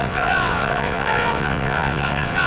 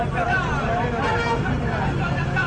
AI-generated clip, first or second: first